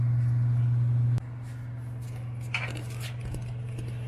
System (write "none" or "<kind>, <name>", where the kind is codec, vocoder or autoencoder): none